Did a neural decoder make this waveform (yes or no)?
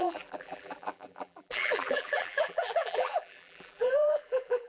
yes